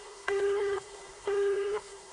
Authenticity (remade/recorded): remade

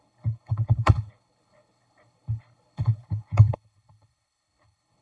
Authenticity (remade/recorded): remade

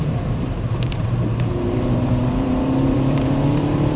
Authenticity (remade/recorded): remade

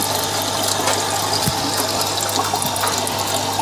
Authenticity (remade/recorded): recorded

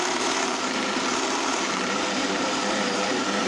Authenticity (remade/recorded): remade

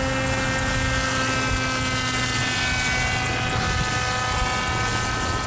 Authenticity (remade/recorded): recorded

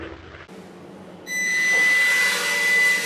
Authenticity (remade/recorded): recorded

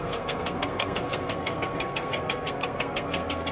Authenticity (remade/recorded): remade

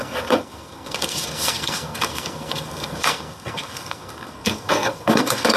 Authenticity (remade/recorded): remade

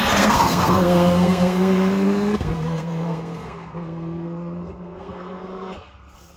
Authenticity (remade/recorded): remade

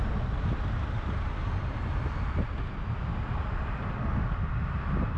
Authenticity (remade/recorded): recorded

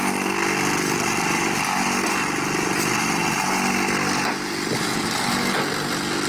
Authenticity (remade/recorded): recorded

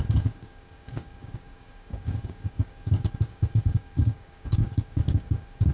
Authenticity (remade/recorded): remade